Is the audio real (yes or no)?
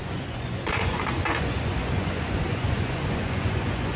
no